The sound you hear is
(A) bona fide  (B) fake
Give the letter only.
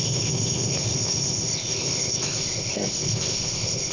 B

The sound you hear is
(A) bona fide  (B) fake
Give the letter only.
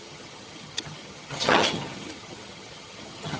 B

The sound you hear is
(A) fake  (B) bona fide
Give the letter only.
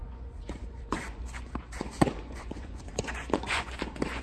A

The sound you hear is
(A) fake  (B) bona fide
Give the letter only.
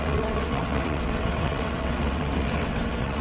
A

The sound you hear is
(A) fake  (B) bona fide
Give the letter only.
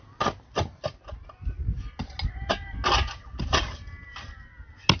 B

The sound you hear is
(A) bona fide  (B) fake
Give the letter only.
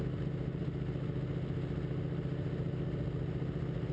A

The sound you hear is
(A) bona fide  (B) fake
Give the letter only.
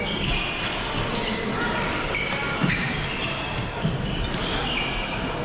A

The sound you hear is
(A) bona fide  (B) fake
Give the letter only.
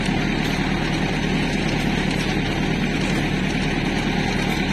A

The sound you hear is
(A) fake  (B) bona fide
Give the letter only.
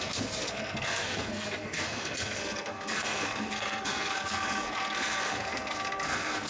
A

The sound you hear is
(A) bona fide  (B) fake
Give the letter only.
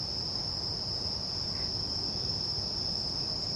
A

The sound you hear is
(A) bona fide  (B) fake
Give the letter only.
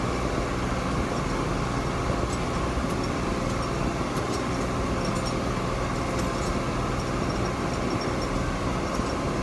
A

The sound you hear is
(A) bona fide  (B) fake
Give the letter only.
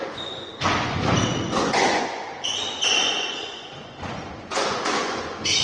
B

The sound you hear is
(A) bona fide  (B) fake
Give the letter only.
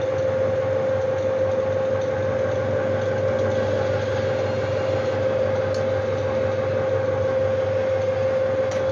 A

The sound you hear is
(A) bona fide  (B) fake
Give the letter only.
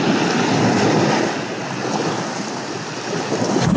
A